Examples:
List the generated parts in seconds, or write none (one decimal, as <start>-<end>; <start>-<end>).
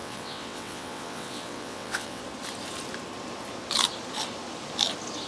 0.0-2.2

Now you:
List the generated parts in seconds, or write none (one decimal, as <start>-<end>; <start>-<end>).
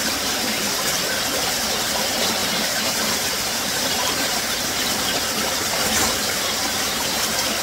2.4-4.6; 6.2-7.6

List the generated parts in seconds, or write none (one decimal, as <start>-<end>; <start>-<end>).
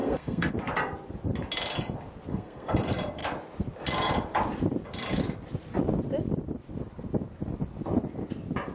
0.0-0.5; 2.3-2.8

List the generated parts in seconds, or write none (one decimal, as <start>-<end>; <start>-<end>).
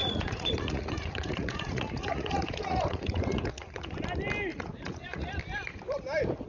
0.0-3.9; 4.5-5.4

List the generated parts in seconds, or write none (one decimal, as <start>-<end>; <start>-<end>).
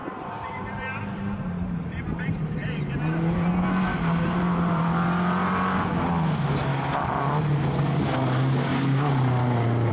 0.0-3.5; 3.9-4.8